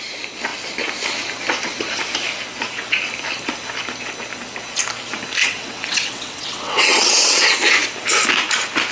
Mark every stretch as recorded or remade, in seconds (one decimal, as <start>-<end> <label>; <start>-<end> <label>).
0.0-5.4 recorded; 5.4-7.4 remade; 7.4-8.9 recorded